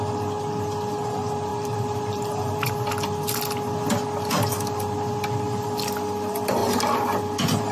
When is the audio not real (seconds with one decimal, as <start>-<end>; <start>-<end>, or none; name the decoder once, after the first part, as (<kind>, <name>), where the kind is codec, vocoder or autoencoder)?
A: 1.5-2.7 (vocoder, BigVGAN v2)